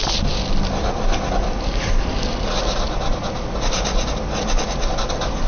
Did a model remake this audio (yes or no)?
no